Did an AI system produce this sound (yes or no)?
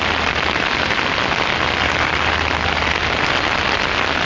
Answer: no